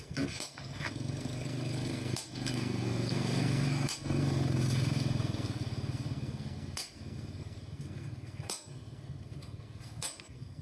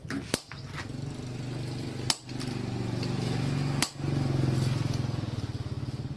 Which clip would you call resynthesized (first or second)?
first